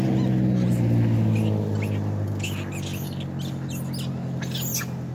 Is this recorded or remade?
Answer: recorded